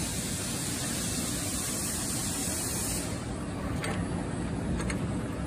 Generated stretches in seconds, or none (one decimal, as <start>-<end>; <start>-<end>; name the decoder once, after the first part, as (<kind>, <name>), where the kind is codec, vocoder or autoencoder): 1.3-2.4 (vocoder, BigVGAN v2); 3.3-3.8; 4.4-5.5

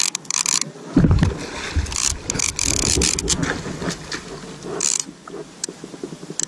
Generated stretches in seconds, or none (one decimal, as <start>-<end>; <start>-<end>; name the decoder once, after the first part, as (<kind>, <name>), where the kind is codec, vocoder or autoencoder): none

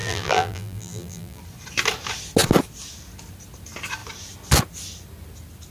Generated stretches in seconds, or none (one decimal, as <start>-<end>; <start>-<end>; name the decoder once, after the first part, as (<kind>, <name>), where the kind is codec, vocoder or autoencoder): 0.0-1.4 (vocoder, BigVGAN v2)

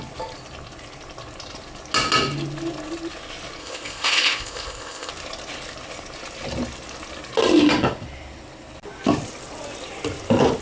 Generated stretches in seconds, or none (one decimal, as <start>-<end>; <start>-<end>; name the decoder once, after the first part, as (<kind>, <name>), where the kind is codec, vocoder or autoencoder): 3.6-5.1 (codec, ZipCodec)

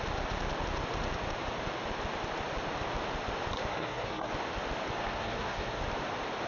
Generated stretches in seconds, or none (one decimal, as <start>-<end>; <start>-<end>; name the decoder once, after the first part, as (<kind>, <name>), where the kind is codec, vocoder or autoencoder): 3.7-4.3 (codec, SNAC); 5.0-5.8

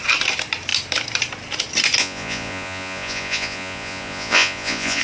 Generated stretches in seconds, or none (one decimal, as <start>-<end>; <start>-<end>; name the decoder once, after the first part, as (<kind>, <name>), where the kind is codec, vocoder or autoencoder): 2.0-5.0 (vocoder, Vocos)